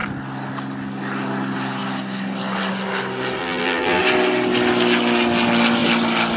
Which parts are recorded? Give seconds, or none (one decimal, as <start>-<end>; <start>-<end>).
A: 0.0-3.4; 4.0-6.4